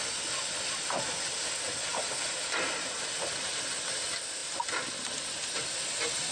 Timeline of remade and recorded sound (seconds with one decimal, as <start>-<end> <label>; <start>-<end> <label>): 0.0-6.3 recorded